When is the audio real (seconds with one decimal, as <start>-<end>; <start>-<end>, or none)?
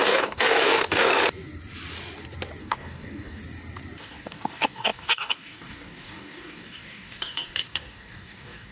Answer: 1.2-2.6; 3.4-4.0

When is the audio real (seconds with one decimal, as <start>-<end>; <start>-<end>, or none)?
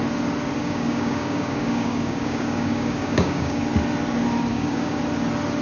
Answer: 0.0-0.6; 3.6-4.5; 5.0-5.6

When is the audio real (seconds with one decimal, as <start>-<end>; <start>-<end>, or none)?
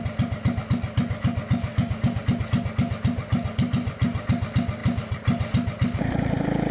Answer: 0.0-1.7; 2.2-6.7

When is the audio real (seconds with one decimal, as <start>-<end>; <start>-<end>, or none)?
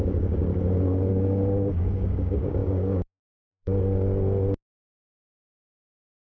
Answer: 0.4-1.1; 3.9-6.3